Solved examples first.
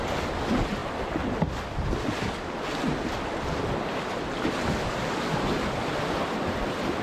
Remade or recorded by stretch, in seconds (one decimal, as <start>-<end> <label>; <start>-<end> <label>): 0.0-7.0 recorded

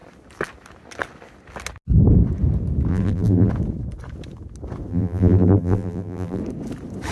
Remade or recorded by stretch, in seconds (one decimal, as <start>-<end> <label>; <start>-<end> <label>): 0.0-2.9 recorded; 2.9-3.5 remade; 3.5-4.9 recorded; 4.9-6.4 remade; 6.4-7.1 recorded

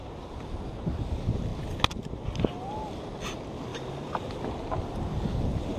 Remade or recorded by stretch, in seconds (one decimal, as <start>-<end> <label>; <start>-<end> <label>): 0.0-3.7 recorded; 3.7-4.3 remade; 4.3-5.8 recorded

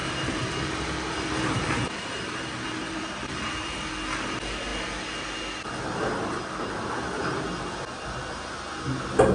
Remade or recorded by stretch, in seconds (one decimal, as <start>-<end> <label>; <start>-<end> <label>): 0.0-3.9 remade; 3.9-9.3 recorded

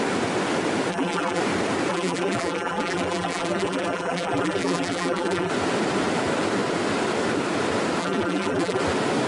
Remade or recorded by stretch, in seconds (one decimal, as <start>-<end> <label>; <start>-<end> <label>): 0.0-0.9 recorded; 0.9-1.4 remade; 1.4-1.9 recorded; 1.9-5.5 remade; 5.5-8.0 recorded; 8.0-8.8 remade; 8.8-9.3 recorded

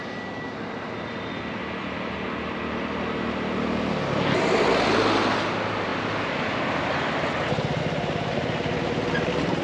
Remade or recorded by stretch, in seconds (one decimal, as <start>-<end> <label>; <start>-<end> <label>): 0.0-9.6 recorded

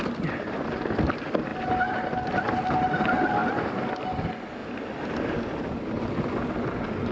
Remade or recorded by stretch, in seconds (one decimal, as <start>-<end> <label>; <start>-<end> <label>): 0.0-7.1 recorded